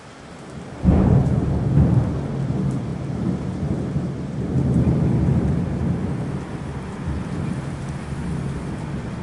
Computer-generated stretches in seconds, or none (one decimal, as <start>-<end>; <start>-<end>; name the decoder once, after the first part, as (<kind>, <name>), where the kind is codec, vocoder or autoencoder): none